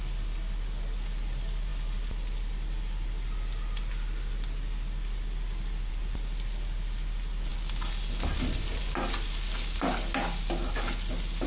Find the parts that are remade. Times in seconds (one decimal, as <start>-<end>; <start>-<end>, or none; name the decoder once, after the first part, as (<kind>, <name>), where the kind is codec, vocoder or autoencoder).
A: none